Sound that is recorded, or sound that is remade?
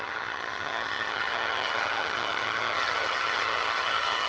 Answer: remade